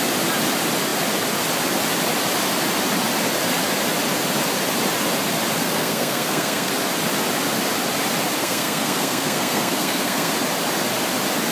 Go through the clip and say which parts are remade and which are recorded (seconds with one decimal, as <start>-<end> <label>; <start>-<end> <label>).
0.0-5.6 recorded; 5.6-6.7 remade; 6.7-8.4 recorded; 8.4-10.3 remade; 10.3-11.5 recorded